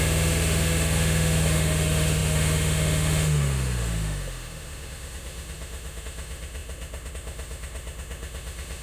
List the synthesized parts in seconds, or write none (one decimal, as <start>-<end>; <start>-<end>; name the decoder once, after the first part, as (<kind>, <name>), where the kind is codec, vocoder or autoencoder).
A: 0.0-8.8 (autoencoder, DAC-VAE)